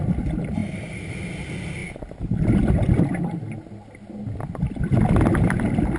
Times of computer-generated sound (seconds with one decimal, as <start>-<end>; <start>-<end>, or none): 0.6-1.1